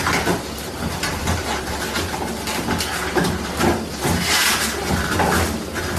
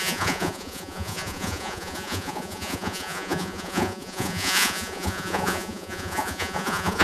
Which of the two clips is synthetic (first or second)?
second